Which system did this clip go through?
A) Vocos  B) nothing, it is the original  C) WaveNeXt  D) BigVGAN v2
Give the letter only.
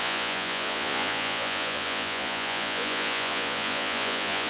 A